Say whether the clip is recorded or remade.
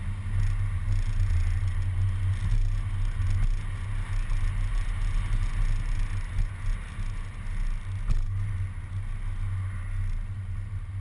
recorded